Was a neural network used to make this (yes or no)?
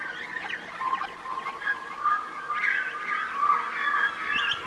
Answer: no